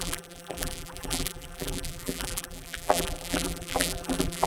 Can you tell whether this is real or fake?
fake